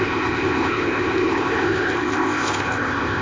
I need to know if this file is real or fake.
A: fake